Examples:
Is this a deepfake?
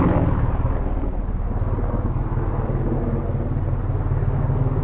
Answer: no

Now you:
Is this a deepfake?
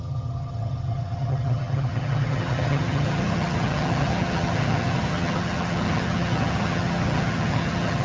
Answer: yes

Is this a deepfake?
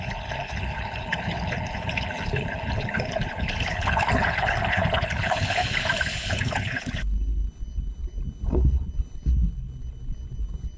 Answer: yes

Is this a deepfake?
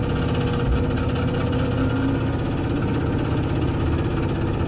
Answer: no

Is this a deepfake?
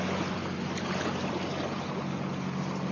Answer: no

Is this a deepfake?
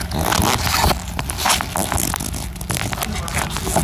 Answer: no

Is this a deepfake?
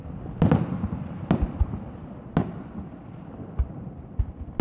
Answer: no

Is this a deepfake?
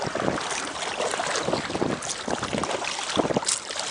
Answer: no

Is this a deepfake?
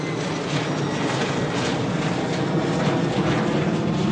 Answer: no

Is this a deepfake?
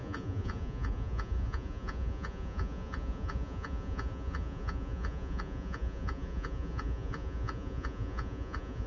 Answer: yes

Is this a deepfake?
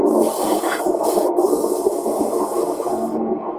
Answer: yes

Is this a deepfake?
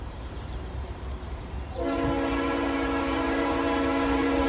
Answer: yes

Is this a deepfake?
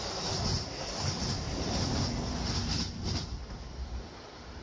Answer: no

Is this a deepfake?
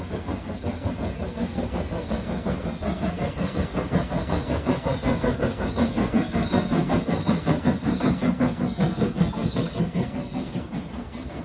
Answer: yes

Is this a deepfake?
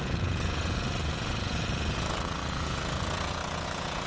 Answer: yes